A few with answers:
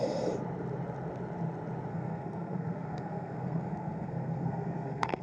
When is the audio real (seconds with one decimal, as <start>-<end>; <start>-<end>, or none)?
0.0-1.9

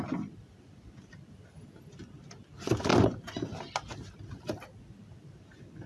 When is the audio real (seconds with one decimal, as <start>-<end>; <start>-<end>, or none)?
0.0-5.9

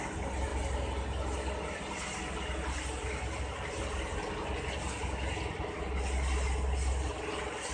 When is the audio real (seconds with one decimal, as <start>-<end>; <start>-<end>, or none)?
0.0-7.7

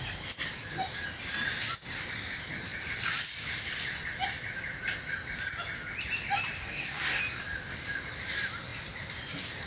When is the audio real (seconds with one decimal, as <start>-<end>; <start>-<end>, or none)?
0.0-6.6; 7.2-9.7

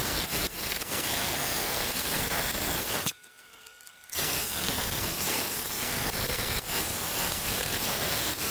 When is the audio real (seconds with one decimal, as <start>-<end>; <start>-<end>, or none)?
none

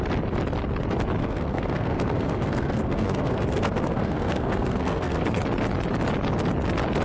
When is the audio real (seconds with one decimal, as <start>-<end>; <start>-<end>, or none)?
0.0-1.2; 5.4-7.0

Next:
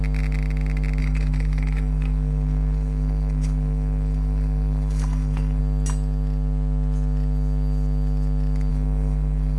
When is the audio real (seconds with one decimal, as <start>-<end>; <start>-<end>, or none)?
0.0-1.0; 5.6-8.7

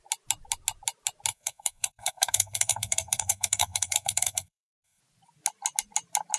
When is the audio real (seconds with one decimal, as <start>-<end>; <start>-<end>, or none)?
0.0-1.3; 5.0-6.4